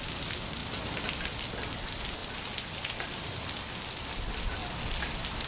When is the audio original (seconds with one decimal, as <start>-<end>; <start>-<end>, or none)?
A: 0.0-2.2; 3.4-5.5